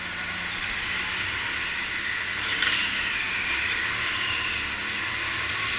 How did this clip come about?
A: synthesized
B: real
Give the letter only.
B